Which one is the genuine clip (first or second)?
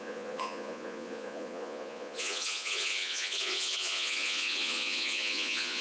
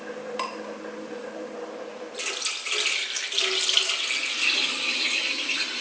second